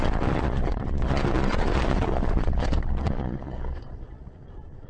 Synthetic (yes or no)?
yes